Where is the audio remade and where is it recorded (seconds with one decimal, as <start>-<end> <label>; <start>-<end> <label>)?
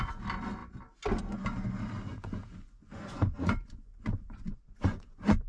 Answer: 0.0-2.1 recorded; 2.1-5.5 remade